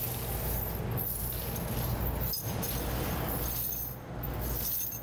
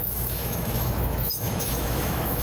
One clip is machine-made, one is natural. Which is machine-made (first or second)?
second